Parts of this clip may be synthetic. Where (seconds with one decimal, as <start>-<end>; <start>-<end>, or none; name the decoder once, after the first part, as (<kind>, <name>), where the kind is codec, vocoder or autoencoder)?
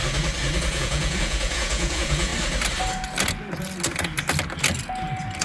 0.6-2.3 (vocoder, Vocos)